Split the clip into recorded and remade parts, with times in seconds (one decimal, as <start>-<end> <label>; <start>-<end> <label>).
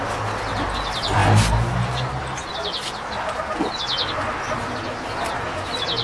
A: 0.0-6.0 recorded